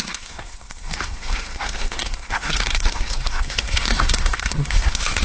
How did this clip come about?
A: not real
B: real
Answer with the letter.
A